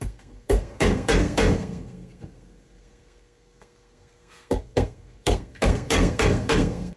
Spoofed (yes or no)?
yes